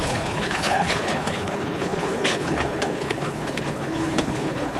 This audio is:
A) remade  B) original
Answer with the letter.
A